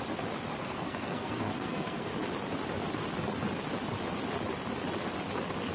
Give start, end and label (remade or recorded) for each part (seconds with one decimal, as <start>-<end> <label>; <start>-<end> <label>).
0.0-0.6 recorded; 0.6-2.1 remade; 2.1-5.7 recorded